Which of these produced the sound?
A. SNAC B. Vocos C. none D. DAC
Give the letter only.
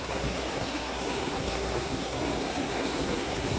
A